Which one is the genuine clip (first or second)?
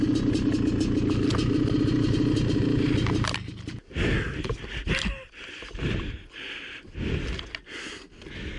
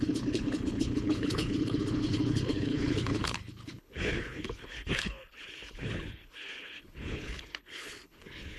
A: first